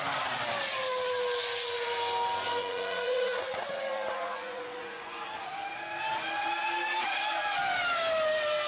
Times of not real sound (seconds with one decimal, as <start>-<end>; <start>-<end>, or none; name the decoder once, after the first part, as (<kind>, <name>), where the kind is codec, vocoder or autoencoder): 2.6-5.2 (vocoder, Vocos)